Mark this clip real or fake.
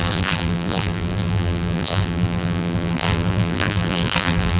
fake